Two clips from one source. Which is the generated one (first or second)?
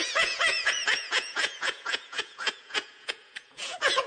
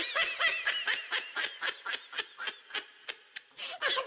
first